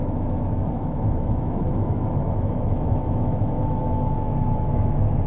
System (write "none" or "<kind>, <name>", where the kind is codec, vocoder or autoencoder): autoencoder, DAC-VAE